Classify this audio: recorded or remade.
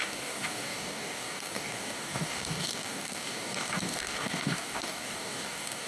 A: remade